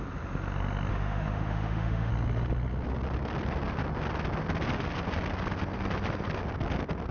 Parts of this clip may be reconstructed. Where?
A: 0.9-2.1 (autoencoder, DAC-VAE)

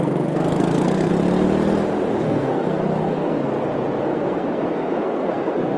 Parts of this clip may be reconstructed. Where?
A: 0.0-1.1 (codec, SNAC); 2.1-3.5; 4.0-5.8

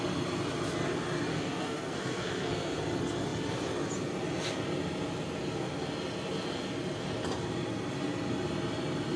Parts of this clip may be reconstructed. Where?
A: 1.3-2.8 (codec, SNAC)

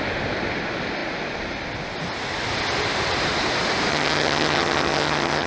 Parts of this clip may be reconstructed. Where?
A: 3.9-5.5 (vocoder, HiFi-GAN)

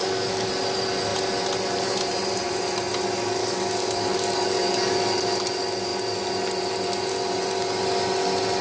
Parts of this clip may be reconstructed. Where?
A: 0.0-0.5 (codec, DAC); 3.4-5.0